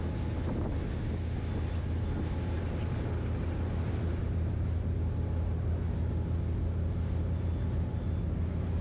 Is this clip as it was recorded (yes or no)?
yes